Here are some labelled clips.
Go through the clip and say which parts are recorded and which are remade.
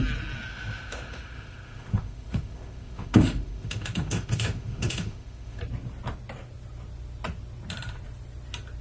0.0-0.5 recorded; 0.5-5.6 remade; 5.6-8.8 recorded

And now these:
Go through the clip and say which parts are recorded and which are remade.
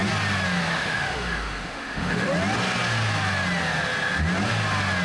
0.0-0.7 recorded; 0.7-2.3 remade; 2.3-5.0 recorded